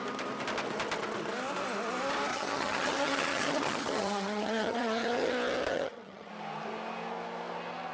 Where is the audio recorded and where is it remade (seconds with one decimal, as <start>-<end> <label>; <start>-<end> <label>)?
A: 0.0-2.3 recorded; 2.3-5.3 remade; 5.3-5.7 recorded; 5.7-6.3 remade; 6.3-7.9 recorded